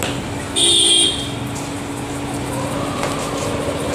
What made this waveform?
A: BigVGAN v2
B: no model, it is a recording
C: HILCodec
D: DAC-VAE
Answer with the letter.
B